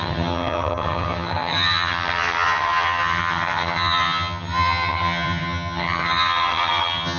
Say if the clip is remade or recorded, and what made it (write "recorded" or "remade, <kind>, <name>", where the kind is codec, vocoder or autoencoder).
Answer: remade, vocoder, HiFi-GAN